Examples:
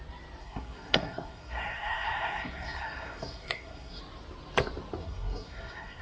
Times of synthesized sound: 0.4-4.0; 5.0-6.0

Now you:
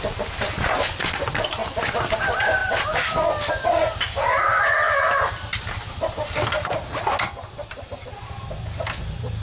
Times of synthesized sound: none

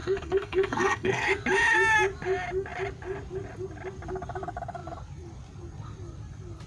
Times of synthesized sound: 0.0-1.3

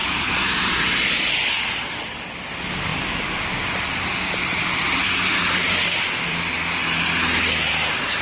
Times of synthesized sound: 0.0-1.6; 2.9-3.4; 4.6-8.2

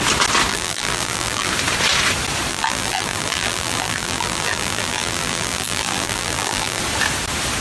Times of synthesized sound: 0.5-1.5; 2.5-6.8

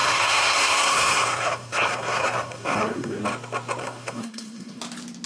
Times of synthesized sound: 0.0-3.2; 3.8-4.8

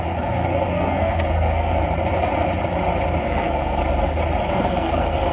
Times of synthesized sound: 0.0-1.7; 3.2-3.8; 4.5-5.3

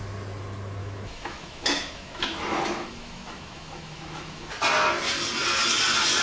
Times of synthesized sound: 0.8-4.5